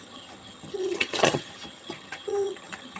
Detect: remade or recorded remade